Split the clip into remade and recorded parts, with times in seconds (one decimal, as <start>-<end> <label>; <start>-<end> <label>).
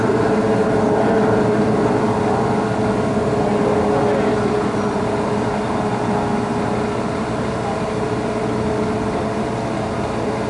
0.0-10.5 recorded